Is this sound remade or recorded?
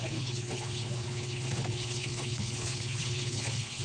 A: remade